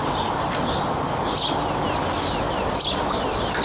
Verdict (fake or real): real